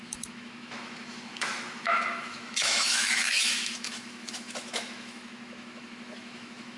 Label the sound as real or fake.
fake